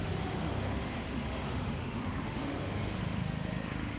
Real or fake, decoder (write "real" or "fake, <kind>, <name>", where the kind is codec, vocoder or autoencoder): fake, autoencoder, DAC-VAE